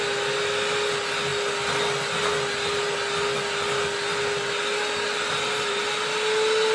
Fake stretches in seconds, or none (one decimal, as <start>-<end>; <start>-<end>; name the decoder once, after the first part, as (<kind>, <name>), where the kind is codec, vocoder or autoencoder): none